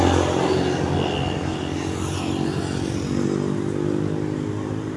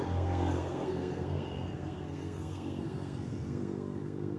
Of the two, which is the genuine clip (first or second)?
first